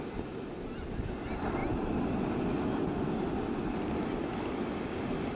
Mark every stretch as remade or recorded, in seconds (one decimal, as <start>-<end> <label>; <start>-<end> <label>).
0.0-5.3 recorded